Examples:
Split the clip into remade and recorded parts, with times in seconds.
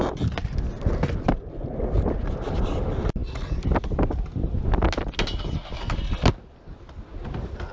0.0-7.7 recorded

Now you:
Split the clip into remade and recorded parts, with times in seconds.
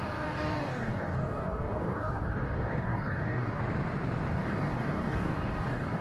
0.0-3.6 remade; 3.6-4.3 recorded; 4.3-6.0 remade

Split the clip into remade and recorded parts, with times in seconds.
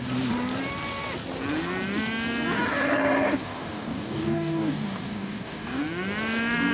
0.0-3.4 recorded; 3.4-5.8 remade; 5.8-6.7 recorded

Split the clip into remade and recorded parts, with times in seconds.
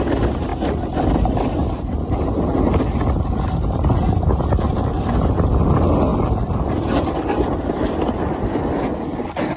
0.0-9.6 recorded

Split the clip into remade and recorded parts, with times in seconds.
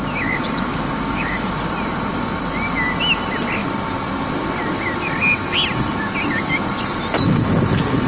0.0-0.7 recorded; 0.7-1.5 remade; 1.5-8.1 recorded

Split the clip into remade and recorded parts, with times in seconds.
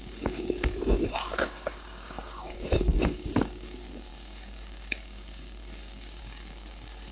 0.0-7.1 remade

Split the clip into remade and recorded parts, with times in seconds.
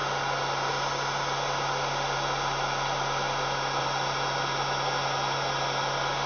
0.0-6.3 recorded